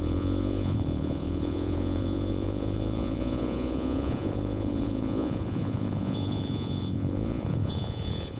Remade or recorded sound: remade